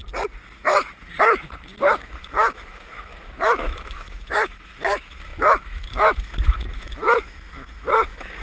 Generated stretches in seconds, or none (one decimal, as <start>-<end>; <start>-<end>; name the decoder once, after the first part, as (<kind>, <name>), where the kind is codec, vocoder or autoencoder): 0.6-8.4 (autoencoder, DAC-VAE)